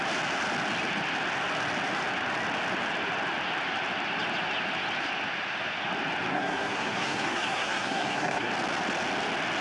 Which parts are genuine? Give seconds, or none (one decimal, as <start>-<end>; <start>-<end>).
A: 0.0-6.3; 8.5-9.6